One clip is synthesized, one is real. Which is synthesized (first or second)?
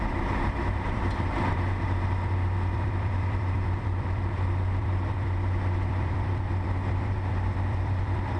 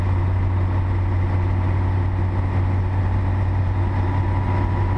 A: first